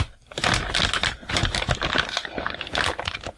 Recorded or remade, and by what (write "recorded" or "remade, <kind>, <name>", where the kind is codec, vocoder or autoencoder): recorded